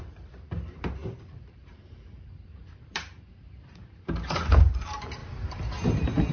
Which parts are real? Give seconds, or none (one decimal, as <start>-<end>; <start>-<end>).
5.2-6.3